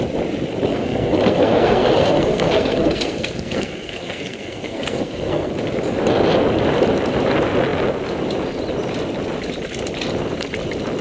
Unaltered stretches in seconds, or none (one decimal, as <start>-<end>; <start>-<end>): 0.0-0.7; 5.5-11.0